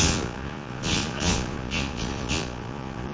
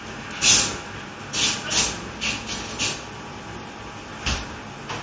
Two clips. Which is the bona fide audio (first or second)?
second